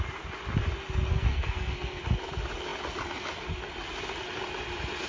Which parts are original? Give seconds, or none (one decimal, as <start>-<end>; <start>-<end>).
0.0-1.1; 2.0-5.1